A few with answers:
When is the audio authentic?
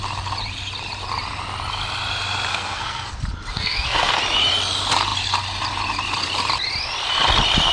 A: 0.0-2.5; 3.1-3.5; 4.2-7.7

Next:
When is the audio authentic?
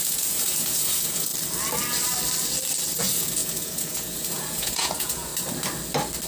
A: 1.3-3.0; 5.3-6.3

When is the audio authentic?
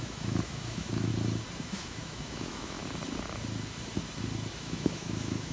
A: 1.1-1.6; 2.8-4.6